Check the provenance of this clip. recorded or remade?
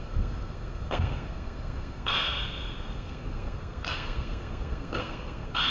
remade